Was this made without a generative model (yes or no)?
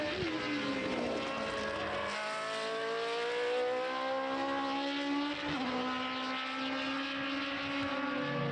yes